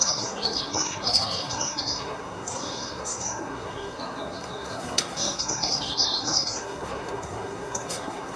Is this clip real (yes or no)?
no